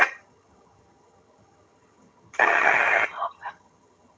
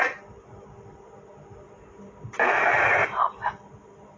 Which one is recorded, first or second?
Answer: second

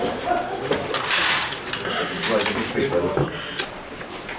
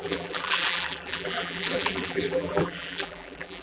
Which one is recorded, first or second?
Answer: first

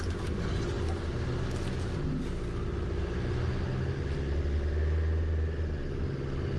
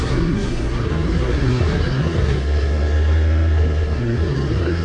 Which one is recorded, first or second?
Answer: first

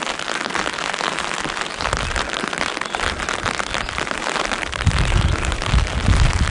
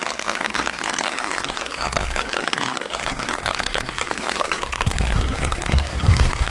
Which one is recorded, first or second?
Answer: first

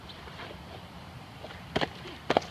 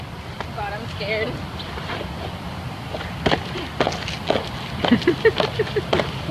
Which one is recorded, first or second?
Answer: second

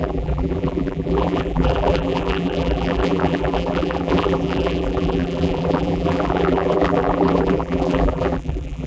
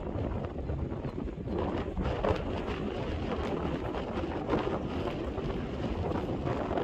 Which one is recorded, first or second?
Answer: second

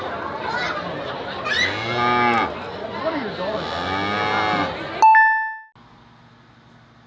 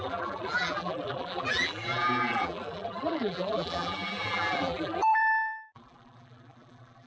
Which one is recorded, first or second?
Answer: first